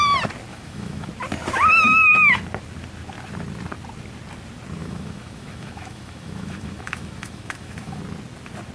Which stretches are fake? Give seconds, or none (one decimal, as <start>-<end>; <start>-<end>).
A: 0.5-1.1; 4.8-8.0